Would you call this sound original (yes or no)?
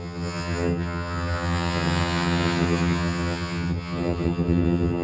no